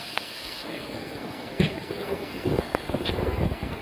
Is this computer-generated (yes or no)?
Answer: yes